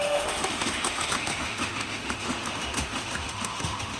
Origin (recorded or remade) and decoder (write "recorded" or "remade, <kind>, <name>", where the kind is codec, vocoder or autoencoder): remade, autoencoder, DAC-VAE